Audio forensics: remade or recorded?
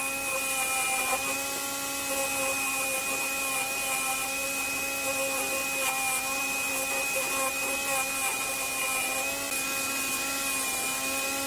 recorded